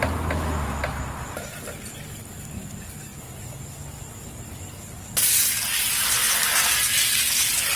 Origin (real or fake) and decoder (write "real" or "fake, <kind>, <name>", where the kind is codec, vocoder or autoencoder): real